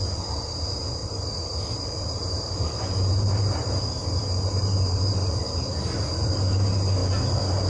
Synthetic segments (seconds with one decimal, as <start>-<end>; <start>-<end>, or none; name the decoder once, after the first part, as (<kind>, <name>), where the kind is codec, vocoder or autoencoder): 1.0-5.4 (vocoder, BigVGAN v2)